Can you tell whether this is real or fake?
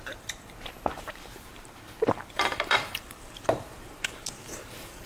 fake